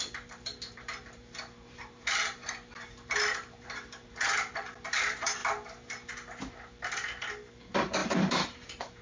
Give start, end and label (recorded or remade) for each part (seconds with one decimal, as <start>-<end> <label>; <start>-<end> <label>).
0.0-5.4 remade; 5.4-7.5 recorded; 7.5-9.0 remade